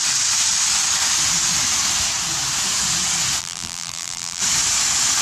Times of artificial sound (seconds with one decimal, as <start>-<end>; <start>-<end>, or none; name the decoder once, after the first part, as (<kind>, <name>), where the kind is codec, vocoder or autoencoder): 3.4-4.4 (vocoder, BigVGAN v2)